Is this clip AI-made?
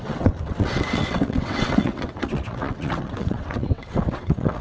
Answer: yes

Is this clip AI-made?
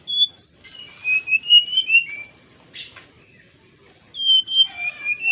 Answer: yes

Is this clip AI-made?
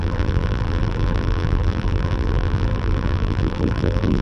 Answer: yes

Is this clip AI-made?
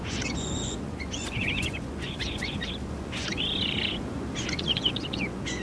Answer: yes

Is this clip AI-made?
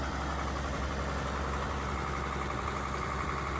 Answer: no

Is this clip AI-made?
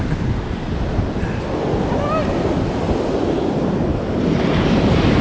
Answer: no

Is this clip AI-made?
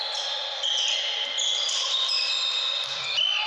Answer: no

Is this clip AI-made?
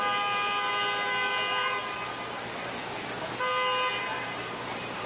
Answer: no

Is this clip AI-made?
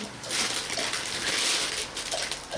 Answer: no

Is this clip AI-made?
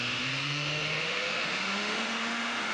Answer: yes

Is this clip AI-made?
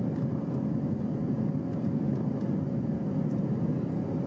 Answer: no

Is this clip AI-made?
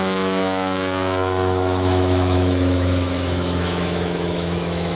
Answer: yes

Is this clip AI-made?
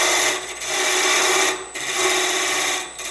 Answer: no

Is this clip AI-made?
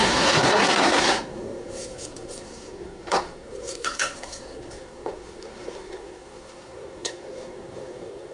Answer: yes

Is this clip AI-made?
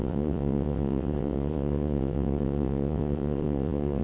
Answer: yes